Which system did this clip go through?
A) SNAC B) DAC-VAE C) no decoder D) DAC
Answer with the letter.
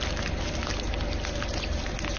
C